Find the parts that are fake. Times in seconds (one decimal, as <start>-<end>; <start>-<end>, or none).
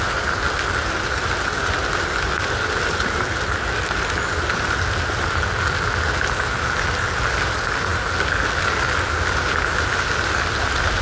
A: none